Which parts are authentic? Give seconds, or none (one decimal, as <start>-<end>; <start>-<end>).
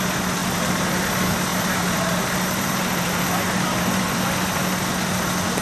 0.0-0.4; 1.1-1.5; 4.2-5.6